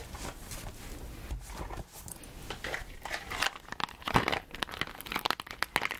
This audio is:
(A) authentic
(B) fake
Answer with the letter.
A